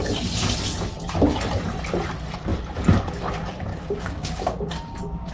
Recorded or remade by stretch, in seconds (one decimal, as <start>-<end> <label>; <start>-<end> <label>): 0.0-3.7 recorded; 3.7-5.3 remade